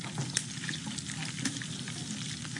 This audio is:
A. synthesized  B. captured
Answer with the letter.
B